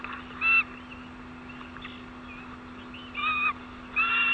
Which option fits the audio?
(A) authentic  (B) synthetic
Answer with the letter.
A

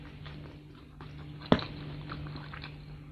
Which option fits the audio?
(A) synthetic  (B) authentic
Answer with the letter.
B